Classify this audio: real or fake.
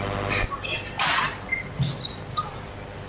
real